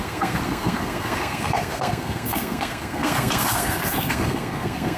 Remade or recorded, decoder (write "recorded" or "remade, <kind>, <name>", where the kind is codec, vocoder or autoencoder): remade, codec, SNAC